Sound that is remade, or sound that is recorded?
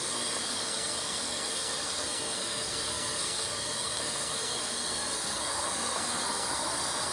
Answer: remade